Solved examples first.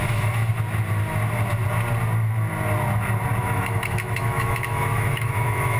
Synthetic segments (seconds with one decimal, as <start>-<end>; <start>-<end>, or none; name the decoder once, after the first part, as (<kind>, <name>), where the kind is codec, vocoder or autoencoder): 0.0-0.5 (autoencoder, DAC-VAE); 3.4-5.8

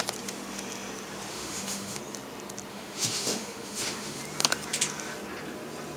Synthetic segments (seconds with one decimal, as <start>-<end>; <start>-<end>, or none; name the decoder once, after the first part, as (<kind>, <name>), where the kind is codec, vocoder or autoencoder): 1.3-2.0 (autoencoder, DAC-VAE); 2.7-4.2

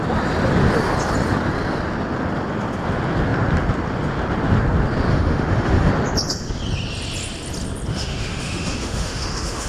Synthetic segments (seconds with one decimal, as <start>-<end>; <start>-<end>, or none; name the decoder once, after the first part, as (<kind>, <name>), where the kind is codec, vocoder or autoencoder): 5.1-5.9 (autoencoder, DAC-VAE); 7.9-9.7

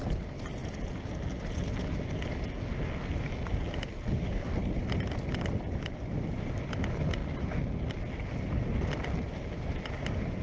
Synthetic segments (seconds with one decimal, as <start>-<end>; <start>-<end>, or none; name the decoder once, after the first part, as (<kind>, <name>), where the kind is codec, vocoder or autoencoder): none